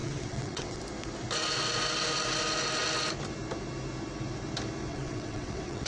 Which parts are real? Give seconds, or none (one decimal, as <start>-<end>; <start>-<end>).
0.8-4.9